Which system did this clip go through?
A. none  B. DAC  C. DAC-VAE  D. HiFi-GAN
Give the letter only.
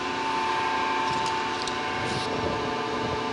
A